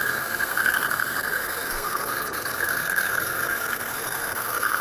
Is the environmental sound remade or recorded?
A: remade